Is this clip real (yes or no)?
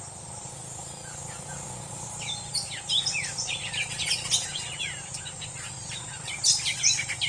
yes